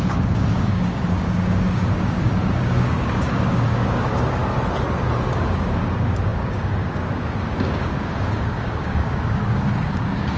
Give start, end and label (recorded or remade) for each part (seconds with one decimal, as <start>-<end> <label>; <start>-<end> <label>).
0.0-4.4 remade; 4.4-5.3 recorded; 5.3-10.4 remade